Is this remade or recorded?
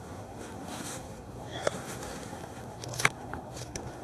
remade